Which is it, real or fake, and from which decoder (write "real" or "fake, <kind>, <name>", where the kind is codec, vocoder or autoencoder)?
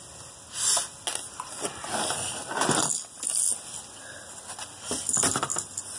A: real